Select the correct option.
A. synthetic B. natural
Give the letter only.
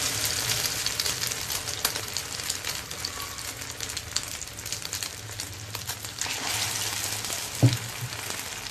A